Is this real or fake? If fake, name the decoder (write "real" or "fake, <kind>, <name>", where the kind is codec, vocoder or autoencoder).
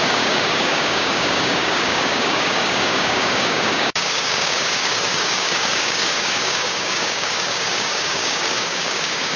fake, codec, DAC